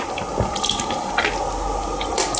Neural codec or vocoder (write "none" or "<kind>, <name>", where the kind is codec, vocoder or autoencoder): none